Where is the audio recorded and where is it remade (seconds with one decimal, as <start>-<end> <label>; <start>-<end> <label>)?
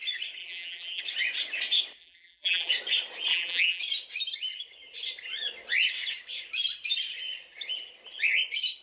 0.0-0.4 recorded; 0.4-1.0 remade; 1.0-2.0 recorded; 2.0-2.7 remade; 2.7-3.3 recorded; 3.3-3.8 remade; 3.8-8.8 recorded